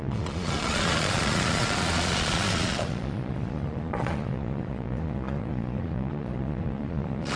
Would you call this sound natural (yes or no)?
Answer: no